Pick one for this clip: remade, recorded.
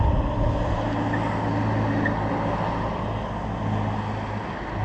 recorded